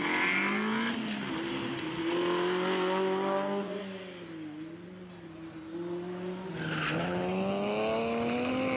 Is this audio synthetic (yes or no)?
no